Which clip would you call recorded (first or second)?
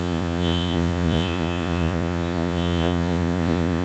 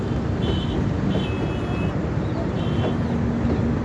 second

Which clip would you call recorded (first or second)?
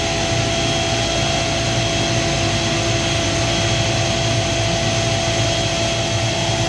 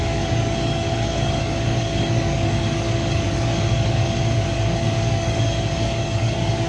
first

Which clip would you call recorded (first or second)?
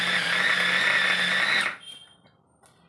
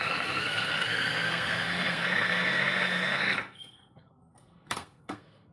first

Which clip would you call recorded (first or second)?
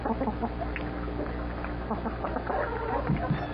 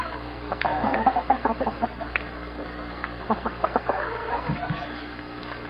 first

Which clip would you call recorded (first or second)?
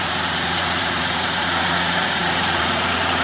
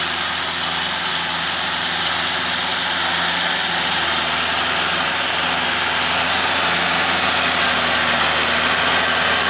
second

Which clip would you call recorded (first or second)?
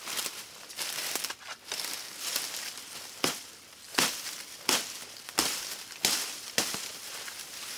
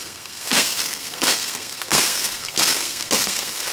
first